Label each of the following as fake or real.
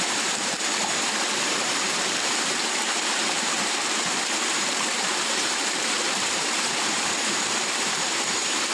fake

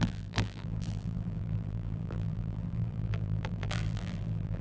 fake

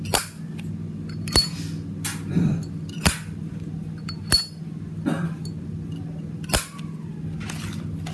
real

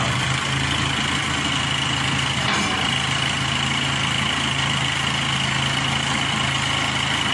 real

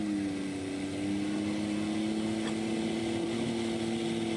real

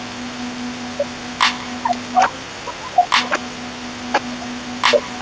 real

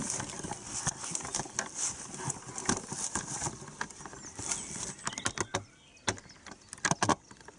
real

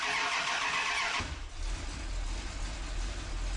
real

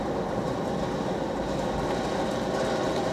real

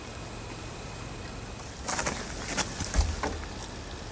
real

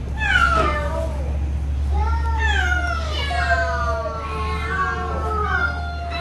real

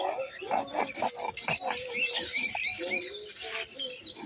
real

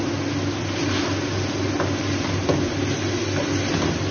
real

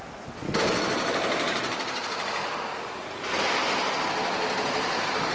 real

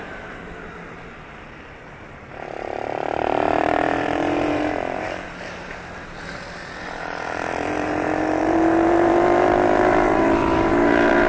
fake